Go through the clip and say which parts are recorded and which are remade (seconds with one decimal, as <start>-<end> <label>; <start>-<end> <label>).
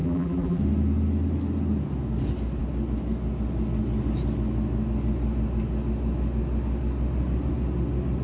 0.0-0.6 remade; 0.6-8.2 recorded